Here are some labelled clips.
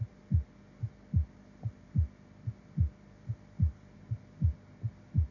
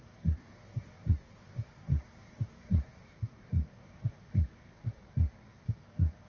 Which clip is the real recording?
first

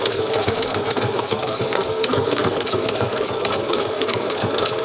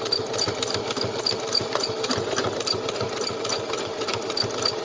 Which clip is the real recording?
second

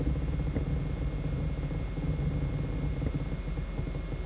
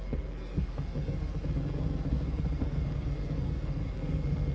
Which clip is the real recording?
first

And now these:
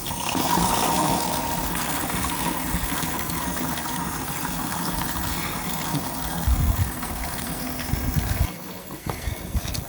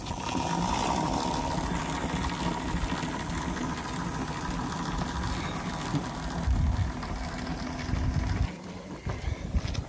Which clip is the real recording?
second